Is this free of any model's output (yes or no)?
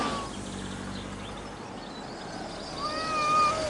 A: yes